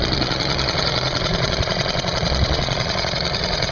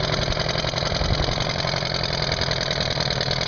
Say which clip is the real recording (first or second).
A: second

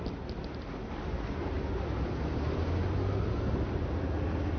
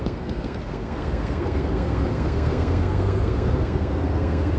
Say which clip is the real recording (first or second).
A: first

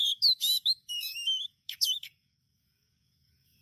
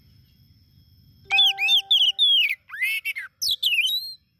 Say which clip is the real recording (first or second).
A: second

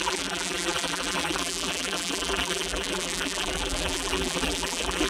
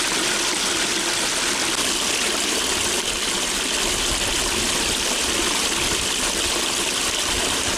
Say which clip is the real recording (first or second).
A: second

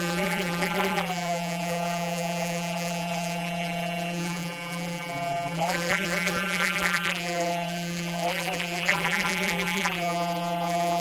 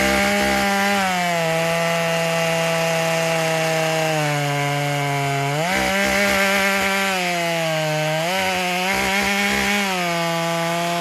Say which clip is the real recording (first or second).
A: second